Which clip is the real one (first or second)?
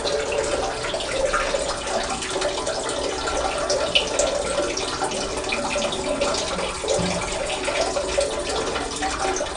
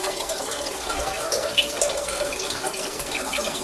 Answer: first